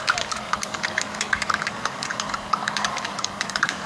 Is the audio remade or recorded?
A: remade